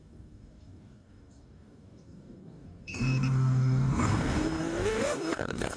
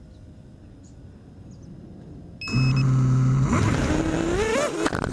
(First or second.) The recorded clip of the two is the second